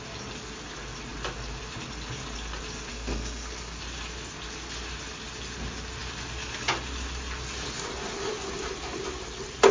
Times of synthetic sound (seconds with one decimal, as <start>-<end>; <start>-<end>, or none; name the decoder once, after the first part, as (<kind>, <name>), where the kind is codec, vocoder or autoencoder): 2.9-3.8 (codec, SNAC)